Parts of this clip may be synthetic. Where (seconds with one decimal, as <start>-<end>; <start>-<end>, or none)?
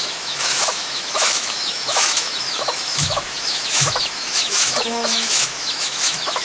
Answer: 0.0-6.4